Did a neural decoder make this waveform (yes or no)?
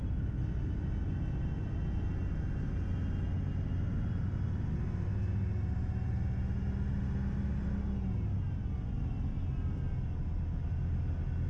no